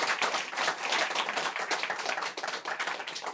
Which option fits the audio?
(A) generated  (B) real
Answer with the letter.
A